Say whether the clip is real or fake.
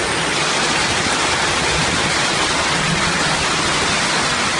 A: real